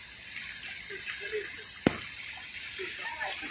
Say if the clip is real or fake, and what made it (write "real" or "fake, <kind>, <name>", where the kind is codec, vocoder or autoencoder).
real